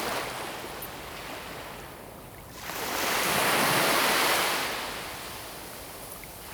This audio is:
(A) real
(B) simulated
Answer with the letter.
A